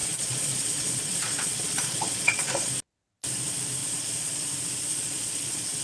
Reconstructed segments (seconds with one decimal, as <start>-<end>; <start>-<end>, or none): 0.0-2.7; 3.8-4.4; 4.9-5.8